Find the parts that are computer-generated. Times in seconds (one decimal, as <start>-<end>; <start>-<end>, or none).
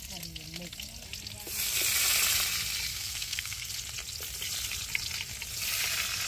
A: 2.9-3.7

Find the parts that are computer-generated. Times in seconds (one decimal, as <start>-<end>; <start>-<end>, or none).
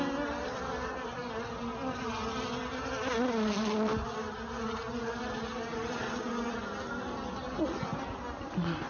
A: none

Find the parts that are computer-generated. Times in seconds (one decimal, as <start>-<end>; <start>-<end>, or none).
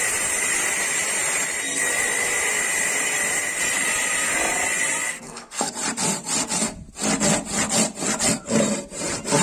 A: 5.1-5.7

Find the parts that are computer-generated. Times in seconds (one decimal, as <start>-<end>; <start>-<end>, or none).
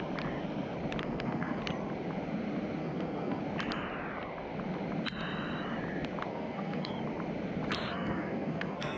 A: 1.0-1.6; 2.8-3.4; 6.3-6.9; 7.9-9.0